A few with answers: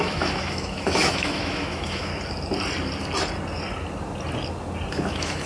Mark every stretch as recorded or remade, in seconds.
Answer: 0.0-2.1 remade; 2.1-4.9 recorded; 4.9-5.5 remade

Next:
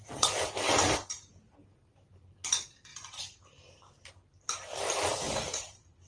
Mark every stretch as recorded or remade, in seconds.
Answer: 0.0-6.1 recorded

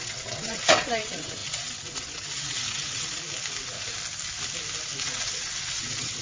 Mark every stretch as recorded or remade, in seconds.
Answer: 0.0-3.2 remade; 3.2-5.0 recorded; 5.0-6.2 remade

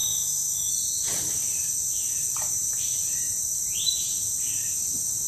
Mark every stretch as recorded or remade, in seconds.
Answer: 0.0-0.7 remade; 0.7-5.3 recorded